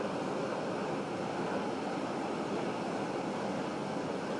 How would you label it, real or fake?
real